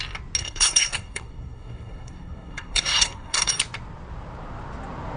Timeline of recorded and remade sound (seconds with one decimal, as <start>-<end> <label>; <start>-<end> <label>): 0.0-0.4 recorded; 0.4-3.5 remade; 3.5-5.2 recorded